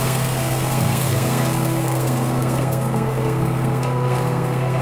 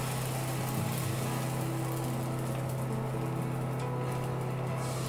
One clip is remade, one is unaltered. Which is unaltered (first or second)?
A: second